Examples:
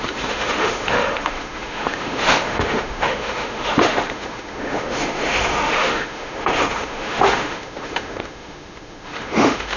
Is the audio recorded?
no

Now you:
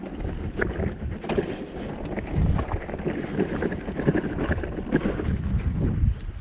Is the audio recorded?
yes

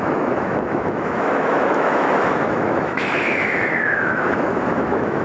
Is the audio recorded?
no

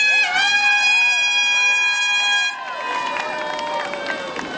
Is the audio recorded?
yes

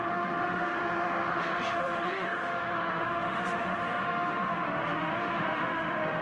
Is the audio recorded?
no